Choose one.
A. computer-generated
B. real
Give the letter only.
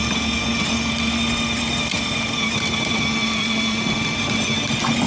B